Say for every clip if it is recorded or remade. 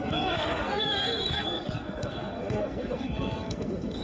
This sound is remade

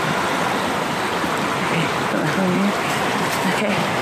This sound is recorded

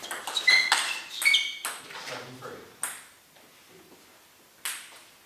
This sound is recorded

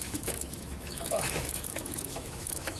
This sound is remade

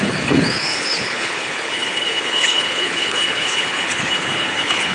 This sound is remade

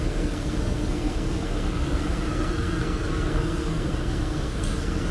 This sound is remade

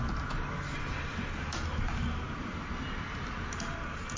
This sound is recorded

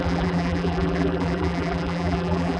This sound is remade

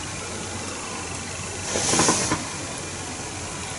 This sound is recorded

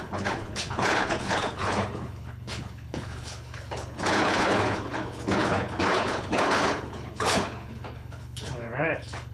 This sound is remade